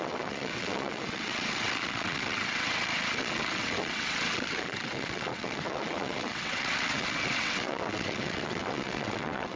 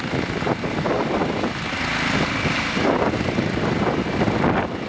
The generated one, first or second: first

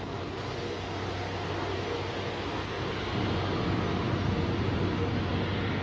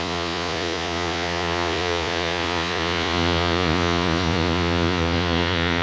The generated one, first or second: second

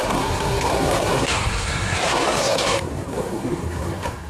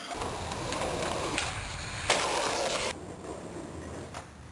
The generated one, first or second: first